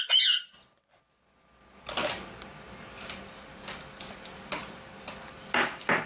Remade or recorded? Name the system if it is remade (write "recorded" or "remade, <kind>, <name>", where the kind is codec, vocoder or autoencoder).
recorded